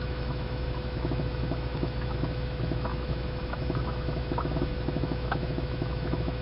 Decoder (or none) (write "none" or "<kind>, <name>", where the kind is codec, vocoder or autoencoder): autoencoder, DAC-VAE